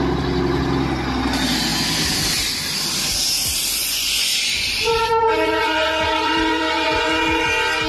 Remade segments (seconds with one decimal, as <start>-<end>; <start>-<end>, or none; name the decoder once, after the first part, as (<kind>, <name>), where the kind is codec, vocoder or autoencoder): 3.8-7.5 (vocoder, Vocos)